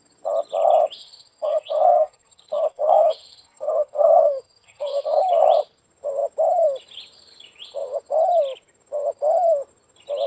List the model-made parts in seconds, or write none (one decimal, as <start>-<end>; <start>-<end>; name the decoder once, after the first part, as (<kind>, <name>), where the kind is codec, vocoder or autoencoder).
1.0-5.2 (codec, SNAC)